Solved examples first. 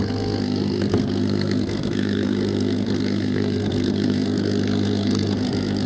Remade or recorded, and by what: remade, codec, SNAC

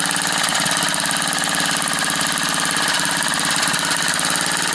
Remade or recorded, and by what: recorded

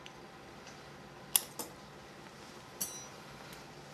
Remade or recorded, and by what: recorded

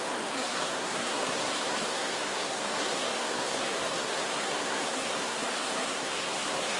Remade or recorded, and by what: remade, codec, SNAC